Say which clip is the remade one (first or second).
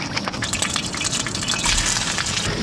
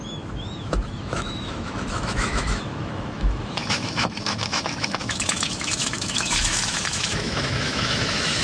second